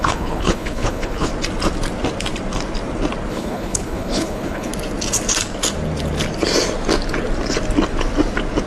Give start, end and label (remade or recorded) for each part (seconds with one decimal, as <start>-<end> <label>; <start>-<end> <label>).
0.0-1.3 remade; 1.3-3.3 recorded; 3.3-4.7 remade; 4.7-8.7 recorded